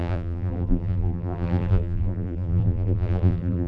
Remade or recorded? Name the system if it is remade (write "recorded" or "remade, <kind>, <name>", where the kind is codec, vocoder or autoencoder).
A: remade, vocoder, BigVGAN v2